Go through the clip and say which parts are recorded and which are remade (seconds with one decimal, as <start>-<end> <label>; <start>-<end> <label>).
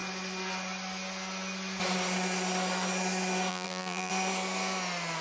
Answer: 0.0-3.5 recorded; 3.5-4.1 remade; 4.1-5.2 recorded